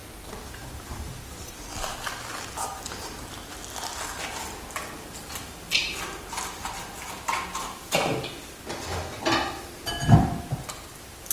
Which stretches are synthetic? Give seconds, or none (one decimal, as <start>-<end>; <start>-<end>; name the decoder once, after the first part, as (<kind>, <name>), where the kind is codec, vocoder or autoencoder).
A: none